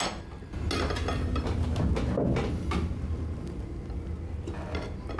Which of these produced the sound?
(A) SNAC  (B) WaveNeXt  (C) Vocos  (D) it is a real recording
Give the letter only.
D